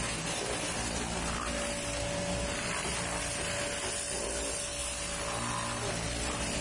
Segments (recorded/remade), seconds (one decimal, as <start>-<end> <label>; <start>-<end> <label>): 0.0-6.6 recorded